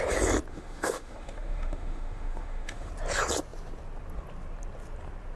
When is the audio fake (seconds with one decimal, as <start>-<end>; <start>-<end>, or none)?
0.5-2.9